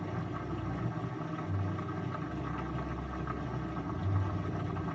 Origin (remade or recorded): recorded